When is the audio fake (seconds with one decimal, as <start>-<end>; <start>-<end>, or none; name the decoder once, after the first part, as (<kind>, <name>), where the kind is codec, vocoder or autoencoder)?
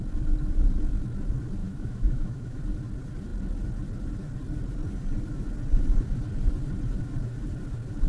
1.6-2.6 (autoencoder, DAC-VAE)